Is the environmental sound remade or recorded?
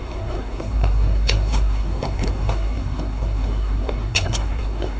remade